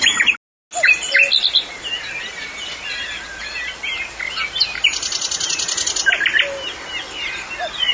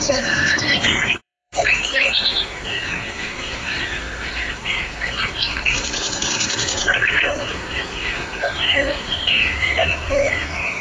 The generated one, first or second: second